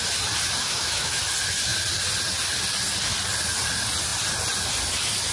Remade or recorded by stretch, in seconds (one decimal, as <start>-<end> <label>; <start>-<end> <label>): 0.0-0.6 recorded; 0.6-1.2 remade; 1.2-5.3 recorded

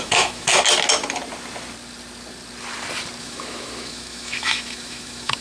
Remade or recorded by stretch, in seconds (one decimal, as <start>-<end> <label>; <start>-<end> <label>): 0.0-0.5 remade; 0.5-3.2 recorded; 3.2-5.4 remade

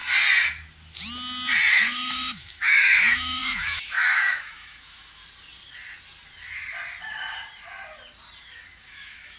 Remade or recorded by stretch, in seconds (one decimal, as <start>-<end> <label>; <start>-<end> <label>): 0.0-1.7 recorded; 1.7-5.2 remade; 5.2-8.4 recorded; 8.4-9.4 remade

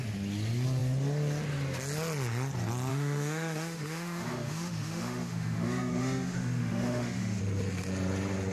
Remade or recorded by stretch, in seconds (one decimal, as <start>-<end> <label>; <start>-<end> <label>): 0.0-2.9 recorded; 2.9-7.4 remade; 7.4-8.5 recorded

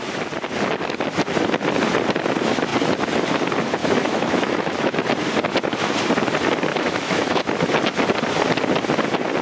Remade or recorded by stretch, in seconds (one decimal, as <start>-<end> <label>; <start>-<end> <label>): 0.0-3.8 recorded; 3.8-5.0 remade; 5.0-6.7 recorded; 6.7-7.4 remade; 7.4-9.4 recorded

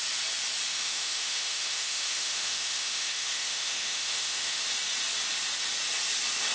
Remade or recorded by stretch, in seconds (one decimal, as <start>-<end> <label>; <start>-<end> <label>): 0.0-0.7 recorded; 0.7-4.6 remade; 4.6-6.5 recorded

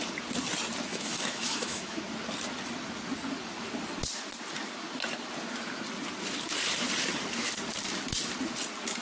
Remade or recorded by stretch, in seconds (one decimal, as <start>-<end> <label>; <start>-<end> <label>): 0.0-0.9 recorded; 0.9-2.0 remade; 2.0-9.0 recorded